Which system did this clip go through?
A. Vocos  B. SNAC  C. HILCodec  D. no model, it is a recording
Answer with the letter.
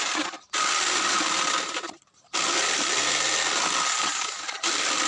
D